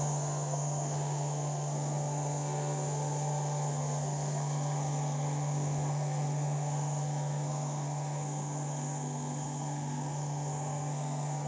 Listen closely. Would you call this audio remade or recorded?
remade